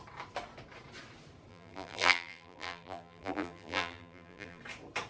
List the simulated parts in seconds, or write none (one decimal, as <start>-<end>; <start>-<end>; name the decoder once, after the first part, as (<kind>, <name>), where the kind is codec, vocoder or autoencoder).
1.5-4.6 (vocoder, BigVGAN v2)